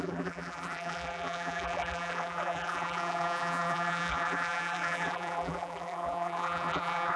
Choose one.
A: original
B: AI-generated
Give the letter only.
B